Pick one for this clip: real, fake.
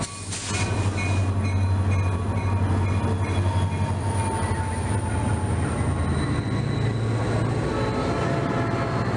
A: real